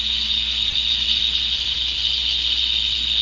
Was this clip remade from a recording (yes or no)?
no